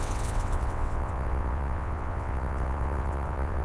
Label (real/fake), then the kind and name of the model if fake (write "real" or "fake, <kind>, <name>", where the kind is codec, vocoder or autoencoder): fake, vocoder, WaveNeXt